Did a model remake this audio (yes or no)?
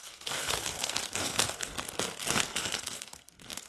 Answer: yes